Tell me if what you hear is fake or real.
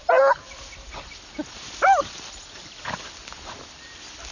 real